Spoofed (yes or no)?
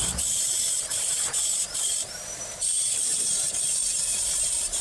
yes